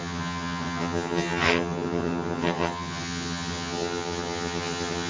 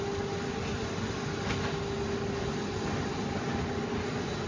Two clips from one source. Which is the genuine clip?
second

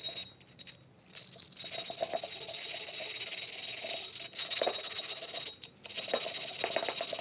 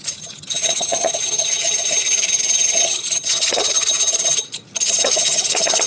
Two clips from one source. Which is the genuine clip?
first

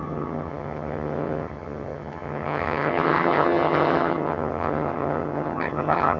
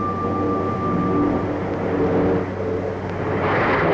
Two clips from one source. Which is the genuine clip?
second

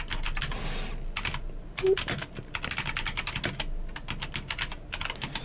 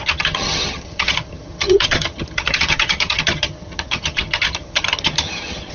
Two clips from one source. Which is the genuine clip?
first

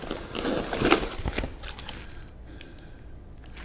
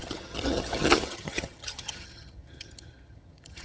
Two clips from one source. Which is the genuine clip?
first